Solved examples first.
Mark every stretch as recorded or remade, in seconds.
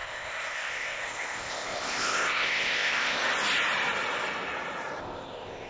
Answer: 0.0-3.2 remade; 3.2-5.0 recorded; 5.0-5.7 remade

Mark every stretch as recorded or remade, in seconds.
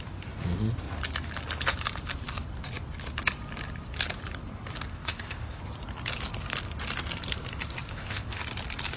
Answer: 0.0-4.9 recorded; 4.9-5.6 remade; 5.6-7.9 recorded; 7.9-8.4 remade; 8.4-9.0 recorded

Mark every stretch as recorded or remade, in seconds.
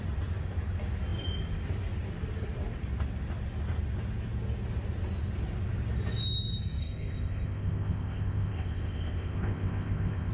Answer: 0.0-6.8 recorded; 6.8-10.3 remade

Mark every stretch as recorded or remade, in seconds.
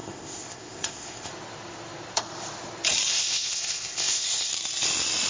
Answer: 0.0-1.3 remade; 1.3-3.1 recorded; 3.1-4.5 remade; 4.5-5.3 recorded